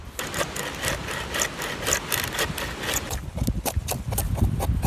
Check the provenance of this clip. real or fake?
real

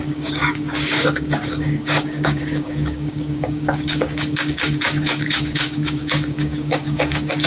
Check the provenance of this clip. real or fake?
fake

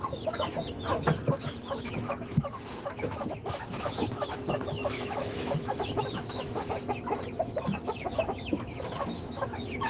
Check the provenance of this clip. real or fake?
fake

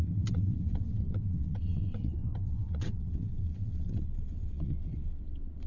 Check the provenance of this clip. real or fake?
fake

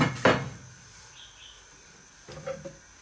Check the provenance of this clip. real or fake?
real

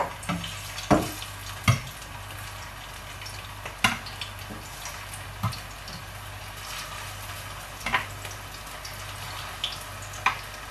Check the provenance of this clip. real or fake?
real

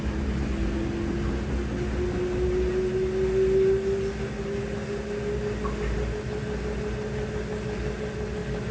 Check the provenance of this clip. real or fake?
real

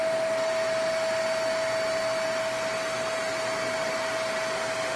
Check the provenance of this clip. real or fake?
real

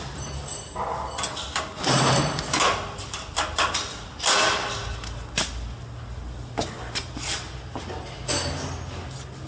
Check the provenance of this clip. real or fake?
real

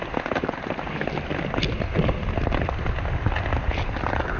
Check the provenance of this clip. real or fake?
real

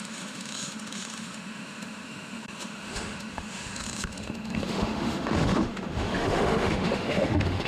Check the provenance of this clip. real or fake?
fake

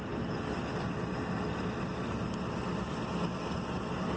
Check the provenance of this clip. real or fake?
real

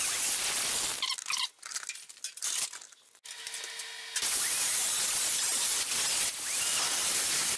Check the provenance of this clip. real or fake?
real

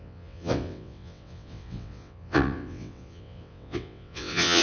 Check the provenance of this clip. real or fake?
fake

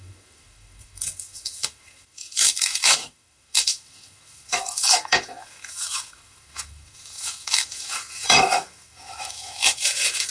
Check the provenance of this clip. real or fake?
fake